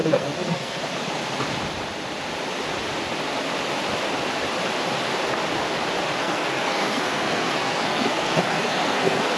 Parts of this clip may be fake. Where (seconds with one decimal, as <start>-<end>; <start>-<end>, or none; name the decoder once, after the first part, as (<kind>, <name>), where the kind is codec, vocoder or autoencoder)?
0.0-0.8 (codec, SNAC); 6.2-9.4